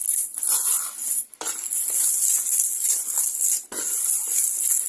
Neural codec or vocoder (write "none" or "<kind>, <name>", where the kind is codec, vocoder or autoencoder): none